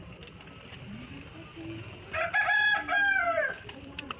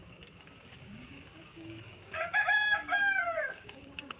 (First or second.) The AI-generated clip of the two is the second